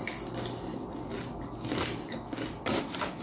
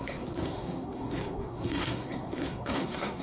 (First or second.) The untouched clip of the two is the first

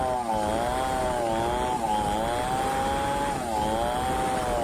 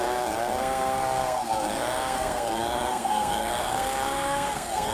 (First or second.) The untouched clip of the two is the first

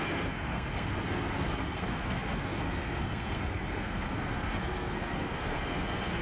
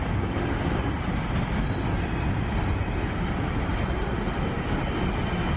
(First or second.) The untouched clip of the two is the second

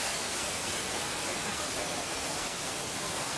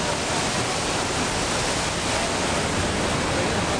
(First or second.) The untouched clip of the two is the second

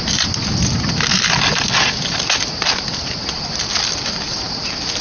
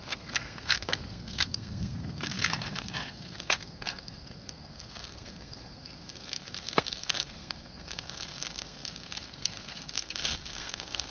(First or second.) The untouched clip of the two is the first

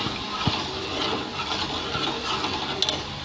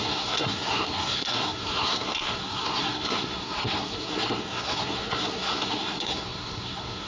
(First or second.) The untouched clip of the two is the first